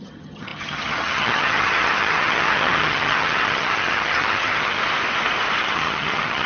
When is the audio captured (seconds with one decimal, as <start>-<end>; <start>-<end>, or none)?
4.8-5.6